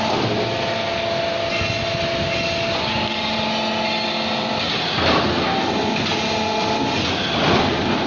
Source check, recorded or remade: recorded